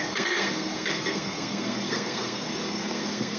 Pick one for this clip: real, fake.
fake